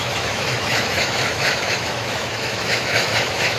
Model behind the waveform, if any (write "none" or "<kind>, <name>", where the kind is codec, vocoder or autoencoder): autoencoder, DAC-VAE